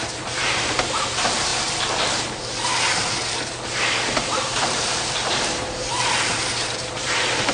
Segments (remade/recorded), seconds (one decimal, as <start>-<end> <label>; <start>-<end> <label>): 0.0-7.5 remade